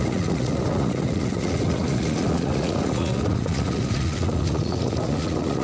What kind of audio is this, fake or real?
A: fake